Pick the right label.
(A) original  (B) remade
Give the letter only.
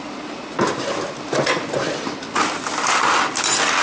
A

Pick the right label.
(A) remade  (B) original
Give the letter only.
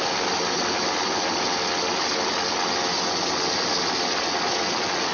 B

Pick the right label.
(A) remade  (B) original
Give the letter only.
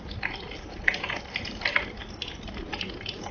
B